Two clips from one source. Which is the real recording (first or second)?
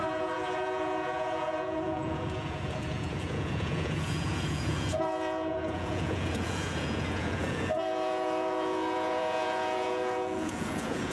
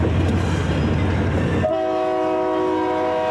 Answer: second